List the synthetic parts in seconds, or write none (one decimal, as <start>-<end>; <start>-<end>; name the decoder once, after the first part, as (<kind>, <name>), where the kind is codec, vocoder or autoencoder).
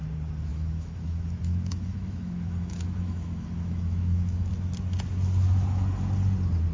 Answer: 0.5-4.5 (autoencoder, DAC-VAE)